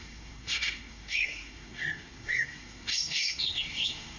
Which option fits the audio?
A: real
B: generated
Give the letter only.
B